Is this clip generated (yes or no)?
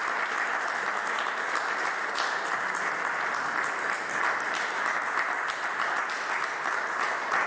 no